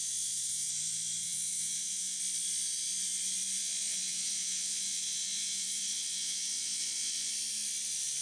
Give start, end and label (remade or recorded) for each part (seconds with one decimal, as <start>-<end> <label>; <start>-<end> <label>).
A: 0.0-0.7 remade; 0.7-1.2 recorded; 1.2-2.2 remade; 2.2-3.6 recorded; 3.6-7.3 remade; 7.3-8.2 recorded